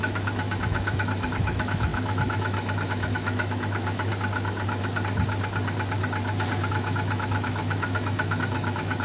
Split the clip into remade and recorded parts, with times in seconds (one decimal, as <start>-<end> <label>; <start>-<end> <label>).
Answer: 0.0-4.1 remade; 4.1-6.7 recorded; 6.7-9.0 remade